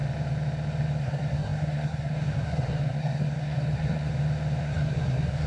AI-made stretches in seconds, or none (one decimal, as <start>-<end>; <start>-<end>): 1.0-4.1; 4.6-5.5

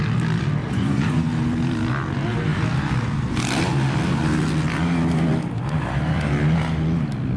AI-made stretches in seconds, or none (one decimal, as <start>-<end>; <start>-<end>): 0.6-1.3

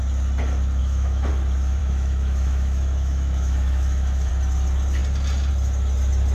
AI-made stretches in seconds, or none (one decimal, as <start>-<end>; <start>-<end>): 0.8-1.3; 1.8-4.3

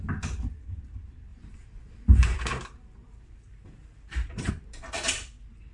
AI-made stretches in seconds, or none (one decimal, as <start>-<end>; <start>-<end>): 1.3-4.5